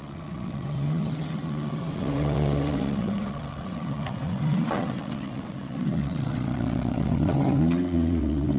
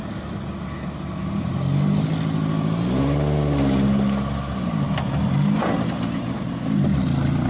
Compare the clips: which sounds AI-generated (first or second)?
first